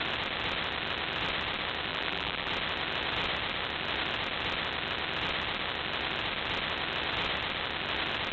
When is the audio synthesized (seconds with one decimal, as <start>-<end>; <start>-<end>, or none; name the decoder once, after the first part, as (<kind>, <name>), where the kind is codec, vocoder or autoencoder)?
1.9-2.5 (vocoder, BigVGAN v2)

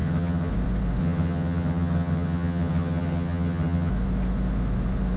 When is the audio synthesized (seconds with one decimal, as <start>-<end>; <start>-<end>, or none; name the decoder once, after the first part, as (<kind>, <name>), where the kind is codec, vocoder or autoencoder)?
0.0-0.5 (vocoder, HiFi-GAN); 1.0-3.9